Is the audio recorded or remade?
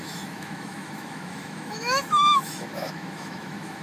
remade